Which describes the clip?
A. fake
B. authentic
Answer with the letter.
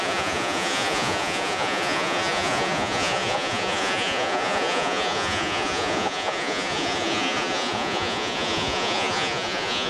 A